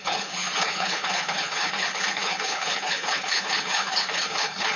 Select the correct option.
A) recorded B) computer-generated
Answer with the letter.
B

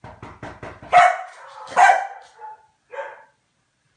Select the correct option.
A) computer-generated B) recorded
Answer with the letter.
B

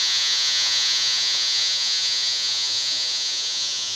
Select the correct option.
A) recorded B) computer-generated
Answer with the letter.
B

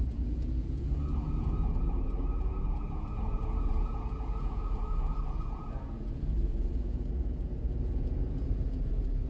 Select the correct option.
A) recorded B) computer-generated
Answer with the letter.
B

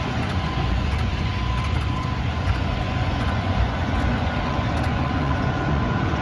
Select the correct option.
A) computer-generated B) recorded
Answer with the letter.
A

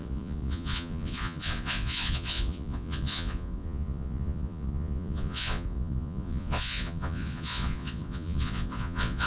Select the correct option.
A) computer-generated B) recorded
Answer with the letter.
A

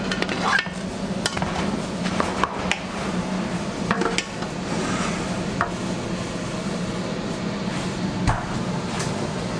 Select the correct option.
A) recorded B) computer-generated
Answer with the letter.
A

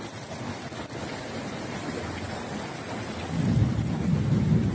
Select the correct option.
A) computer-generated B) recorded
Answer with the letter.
B